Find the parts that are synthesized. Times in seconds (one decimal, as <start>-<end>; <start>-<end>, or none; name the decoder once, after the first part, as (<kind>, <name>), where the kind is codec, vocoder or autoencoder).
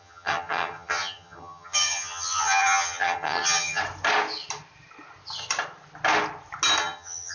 0.0-3.8 (vocoder, HiFi-GAN); 6.8-7.3